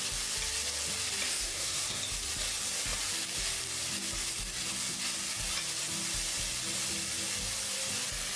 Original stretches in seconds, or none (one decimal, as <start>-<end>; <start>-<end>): 0.0-1.3; 2.0-8.4